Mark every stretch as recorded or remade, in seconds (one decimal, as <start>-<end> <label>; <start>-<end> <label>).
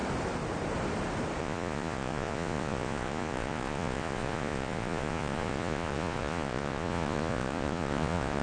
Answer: 0.0-1.4 recorded; 1.4-8.4 remade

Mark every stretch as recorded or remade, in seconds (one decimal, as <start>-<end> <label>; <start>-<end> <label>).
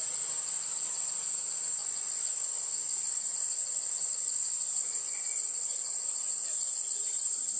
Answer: 0.0-1.8 recorded; 1.8-6.4 remade; 6.4-7.6 recorded